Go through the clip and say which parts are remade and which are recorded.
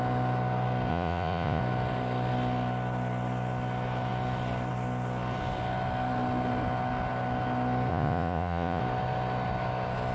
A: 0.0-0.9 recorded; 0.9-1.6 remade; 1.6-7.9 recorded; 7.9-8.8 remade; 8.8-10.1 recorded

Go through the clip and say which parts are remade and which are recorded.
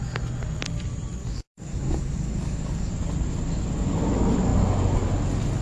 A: 0.0-1.2 recorded; 1.2-2.9 remade; 2.9-5.6 recorded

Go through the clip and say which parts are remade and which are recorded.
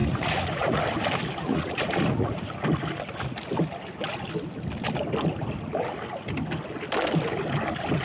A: 0.0-0.8 remade; 0.8-1.4 recorded; 1.4-2.4 remade; 2.4-8.0 recorded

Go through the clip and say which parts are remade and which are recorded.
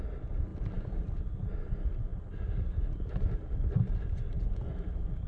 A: 0.0-5.3 recorded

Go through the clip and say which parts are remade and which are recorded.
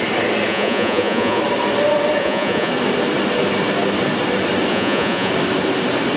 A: 0.0-0.5 recorded; 0.5-1.4 remade; 1.4-2.2 recorded; 2.2-2.7 remade; 2.7-4.7 recorded; 4.7-5.3 remade; 5.3-6.2 recorded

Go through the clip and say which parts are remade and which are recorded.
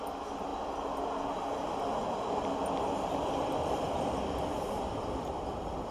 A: 0.0-5.9 recorded